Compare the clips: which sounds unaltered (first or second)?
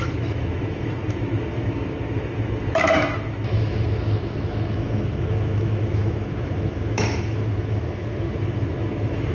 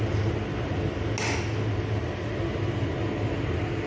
second